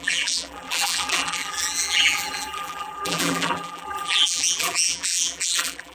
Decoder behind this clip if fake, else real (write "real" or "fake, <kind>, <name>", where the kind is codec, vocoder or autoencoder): fake, vocoder, BigVGAN v2